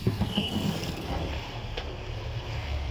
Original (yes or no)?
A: no